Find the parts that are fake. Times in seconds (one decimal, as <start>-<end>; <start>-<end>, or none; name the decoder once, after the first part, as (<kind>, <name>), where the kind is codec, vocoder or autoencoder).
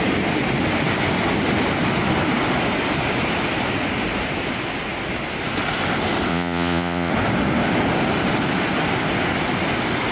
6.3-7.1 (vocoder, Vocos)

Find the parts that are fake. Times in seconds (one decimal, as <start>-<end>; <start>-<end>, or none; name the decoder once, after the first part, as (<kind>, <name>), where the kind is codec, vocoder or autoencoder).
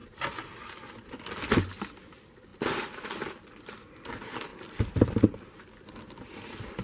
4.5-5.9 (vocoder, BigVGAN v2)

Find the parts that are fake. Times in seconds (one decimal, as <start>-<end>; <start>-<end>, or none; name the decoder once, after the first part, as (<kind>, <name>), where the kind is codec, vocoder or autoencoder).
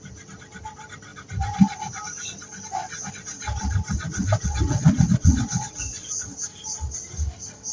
4.2-6.1 (vocoder, WaveNeXt)